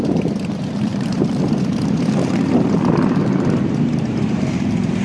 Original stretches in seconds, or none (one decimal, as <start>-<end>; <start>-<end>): none